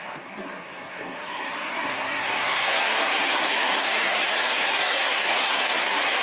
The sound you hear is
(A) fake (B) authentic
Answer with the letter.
A